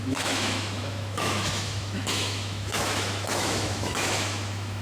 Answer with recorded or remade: remade